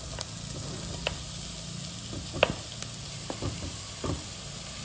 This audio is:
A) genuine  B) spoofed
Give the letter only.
A